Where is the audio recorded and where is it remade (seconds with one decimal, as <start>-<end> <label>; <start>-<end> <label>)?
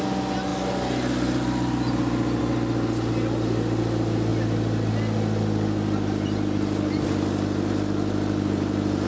0.0-9.1 recorded